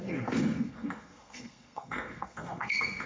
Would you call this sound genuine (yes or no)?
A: no